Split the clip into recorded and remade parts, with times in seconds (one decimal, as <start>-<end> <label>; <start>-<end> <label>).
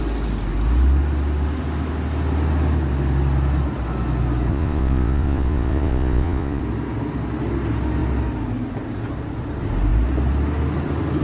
0.0-4.5 recorded; 4.5-6.6 remade; 6.6-11.2 recorded